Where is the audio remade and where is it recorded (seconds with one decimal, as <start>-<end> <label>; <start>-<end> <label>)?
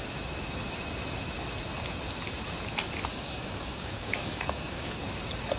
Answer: 0.0-3.1 recorded; 3.1-5.0 remade; 5.0-5.6 recorded